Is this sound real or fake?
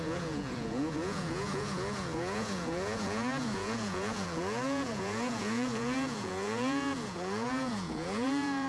fake